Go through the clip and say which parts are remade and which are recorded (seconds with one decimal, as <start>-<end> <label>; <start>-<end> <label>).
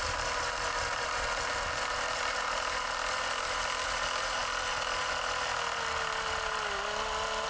0.0-7.5 recorded